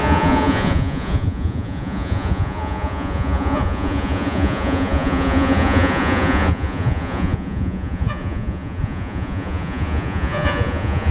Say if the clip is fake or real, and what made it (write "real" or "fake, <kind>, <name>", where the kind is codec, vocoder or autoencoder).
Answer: fake, vocoder, Vocos